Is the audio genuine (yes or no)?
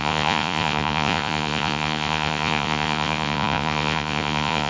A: no